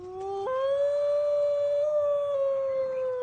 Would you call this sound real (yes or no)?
yes